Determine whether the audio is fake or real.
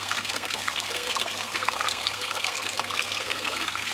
fake